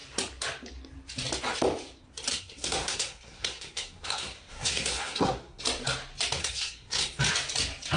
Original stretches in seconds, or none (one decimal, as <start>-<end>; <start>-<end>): 0.0-2.3; 5.6-6.4; 7.2-8.0